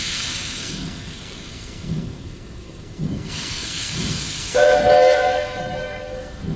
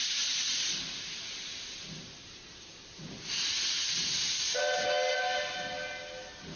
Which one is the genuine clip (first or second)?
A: second